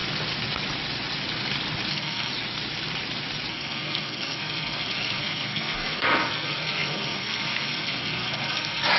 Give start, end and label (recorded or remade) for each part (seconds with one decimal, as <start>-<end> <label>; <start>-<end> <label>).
0.0-1.9 recorded; 1.9-2.3 remade; 2.3-3.5 recorded; 3.5-9.0 remade